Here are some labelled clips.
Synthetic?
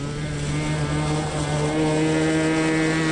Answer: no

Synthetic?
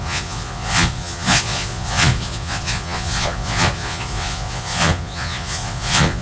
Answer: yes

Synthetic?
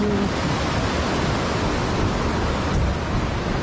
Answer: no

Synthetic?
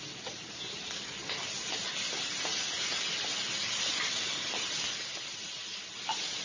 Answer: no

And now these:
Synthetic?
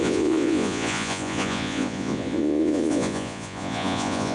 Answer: yes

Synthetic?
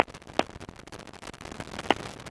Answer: no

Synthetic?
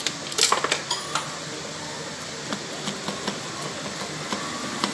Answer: no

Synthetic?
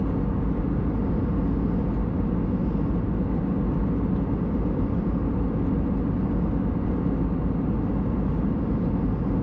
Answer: no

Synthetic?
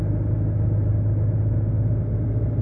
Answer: no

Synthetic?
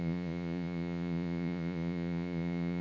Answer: yes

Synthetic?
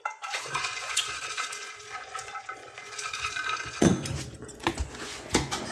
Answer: yes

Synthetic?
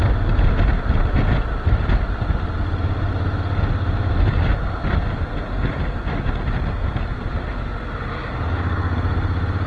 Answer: no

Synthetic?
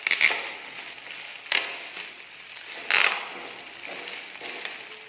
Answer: no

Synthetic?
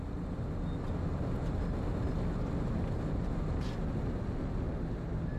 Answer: no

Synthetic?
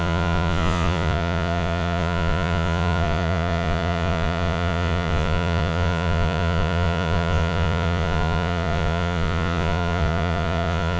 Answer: yes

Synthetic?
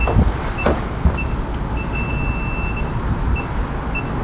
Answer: no